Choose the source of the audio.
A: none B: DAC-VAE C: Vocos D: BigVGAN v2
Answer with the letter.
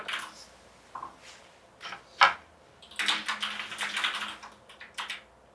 A